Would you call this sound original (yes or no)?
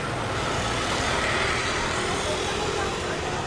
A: no